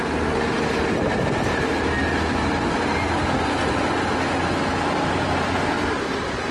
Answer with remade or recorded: recorded